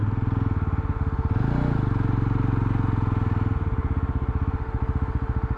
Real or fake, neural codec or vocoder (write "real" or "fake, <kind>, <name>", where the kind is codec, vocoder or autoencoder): real